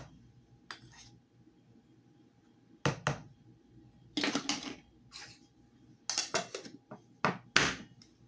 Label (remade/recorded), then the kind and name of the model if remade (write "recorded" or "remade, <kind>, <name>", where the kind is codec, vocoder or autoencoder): recorded